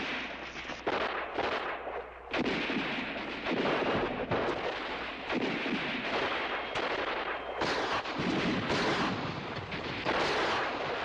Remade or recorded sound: recorded